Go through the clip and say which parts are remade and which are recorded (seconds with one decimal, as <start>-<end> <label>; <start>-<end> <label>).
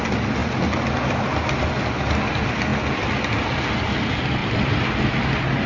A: 0.0-5.7 recorded